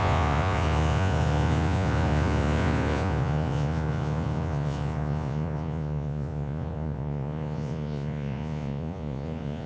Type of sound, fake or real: fake